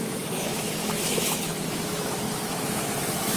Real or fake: fake